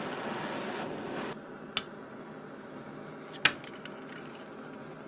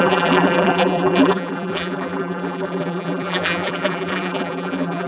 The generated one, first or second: second